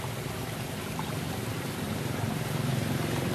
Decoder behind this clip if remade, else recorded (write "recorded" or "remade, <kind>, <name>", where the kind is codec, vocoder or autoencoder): recorded